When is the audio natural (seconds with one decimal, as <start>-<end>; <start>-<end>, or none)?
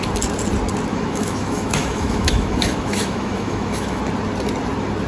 0.0-0.9; 4.0-5.1